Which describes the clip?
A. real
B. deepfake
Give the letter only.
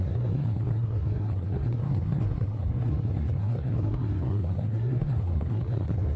B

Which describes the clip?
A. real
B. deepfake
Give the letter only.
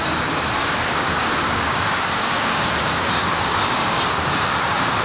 B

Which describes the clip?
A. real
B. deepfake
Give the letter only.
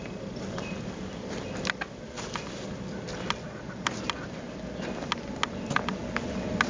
A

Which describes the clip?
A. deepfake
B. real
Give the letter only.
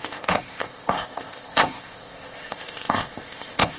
A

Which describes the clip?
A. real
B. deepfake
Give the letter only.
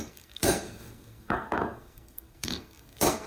B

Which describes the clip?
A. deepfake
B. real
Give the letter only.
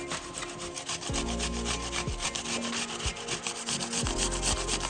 B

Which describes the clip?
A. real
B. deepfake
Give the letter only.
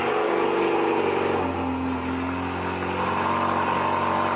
A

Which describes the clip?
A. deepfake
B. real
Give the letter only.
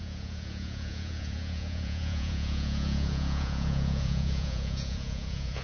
A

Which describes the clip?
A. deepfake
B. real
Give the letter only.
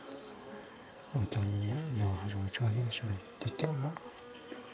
A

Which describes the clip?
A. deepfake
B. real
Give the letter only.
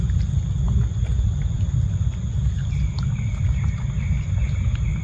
B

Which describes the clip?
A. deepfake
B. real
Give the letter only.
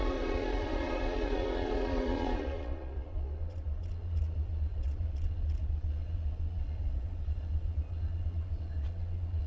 A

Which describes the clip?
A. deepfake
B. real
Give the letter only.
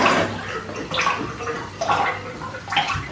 B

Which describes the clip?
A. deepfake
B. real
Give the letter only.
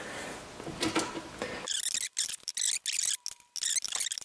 B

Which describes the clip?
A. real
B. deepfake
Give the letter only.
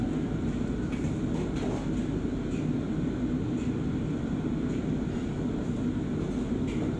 A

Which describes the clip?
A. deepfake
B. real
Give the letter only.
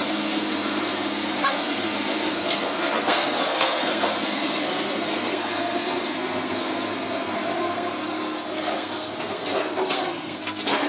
A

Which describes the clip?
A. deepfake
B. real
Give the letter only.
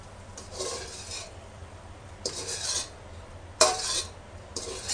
A